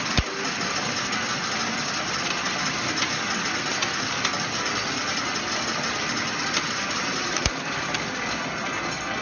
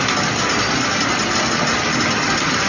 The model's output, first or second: first